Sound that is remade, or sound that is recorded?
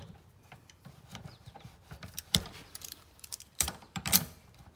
remade